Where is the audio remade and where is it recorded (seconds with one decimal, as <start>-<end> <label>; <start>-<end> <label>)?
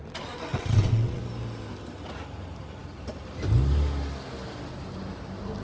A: 0.0-0.5 recorded; 0.5-1.2 remade; 1.2-5.6 recorded